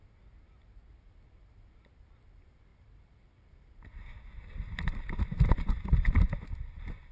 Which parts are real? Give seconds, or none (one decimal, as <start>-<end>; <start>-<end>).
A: 0.0-2.7